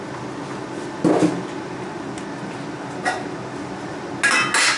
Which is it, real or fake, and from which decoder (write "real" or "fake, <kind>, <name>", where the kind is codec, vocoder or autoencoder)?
real